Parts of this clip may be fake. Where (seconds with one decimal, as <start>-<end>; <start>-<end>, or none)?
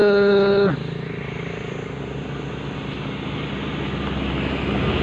0.0-0.7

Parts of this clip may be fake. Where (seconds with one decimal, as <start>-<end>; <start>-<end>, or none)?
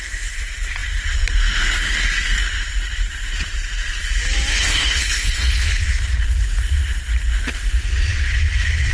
4.5-5.8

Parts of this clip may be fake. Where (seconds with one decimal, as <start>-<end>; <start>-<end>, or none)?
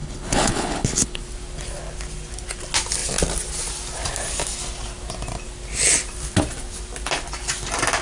0.0-1.2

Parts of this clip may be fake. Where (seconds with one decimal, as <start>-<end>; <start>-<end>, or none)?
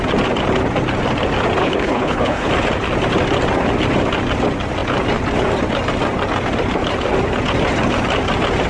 1.6-2.5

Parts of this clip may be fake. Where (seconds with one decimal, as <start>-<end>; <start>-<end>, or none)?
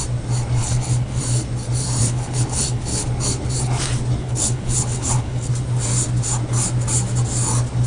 0.6-1.2; 2.0-3.0; 4.2-5.5